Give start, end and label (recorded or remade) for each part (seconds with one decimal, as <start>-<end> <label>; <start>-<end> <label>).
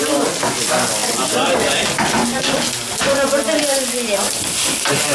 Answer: 0.0-5.1 recorded